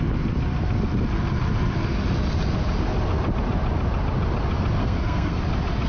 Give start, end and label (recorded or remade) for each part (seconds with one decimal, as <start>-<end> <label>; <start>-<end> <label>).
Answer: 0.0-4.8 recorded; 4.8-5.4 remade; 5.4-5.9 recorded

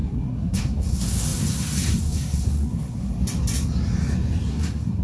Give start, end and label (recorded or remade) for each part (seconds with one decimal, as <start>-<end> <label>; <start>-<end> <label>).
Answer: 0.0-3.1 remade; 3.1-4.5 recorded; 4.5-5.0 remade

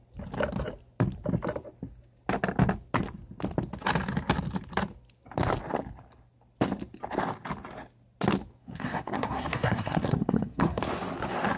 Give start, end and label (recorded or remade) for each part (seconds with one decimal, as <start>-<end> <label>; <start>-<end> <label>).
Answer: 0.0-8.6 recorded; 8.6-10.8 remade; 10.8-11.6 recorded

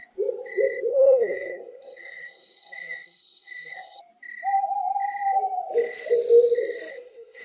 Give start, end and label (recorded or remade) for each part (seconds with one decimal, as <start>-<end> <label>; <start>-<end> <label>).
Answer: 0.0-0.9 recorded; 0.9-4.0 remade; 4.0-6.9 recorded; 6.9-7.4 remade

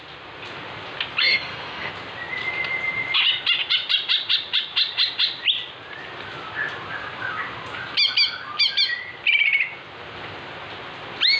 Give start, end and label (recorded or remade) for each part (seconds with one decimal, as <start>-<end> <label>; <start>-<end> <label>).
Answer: 0.0-1.2 recorded; 1.2-1.9 remade; 1.9-11.4 recorded

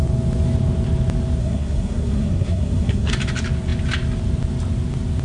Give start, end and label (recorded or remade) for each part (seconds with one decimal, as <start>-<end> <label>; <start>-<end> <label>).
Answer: 0.0-1.4 recorded; 1.4-3.1 remade; 3.1-5.2 recorded